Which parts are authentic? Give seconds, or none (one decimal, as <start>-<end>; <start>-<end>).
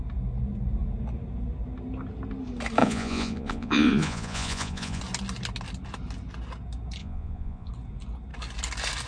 0.0-2.8; 5.0-7.0; 7.7-9.1